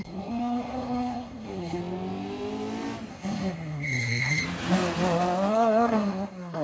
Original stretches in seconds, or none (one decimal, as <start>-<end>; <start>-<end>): 1.8-3.1; 4.4-5.5